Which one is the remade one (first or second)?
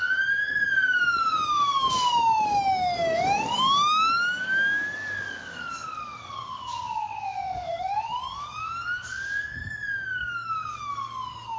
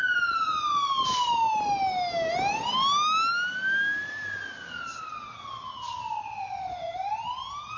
first